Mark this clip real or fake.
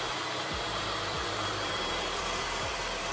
fake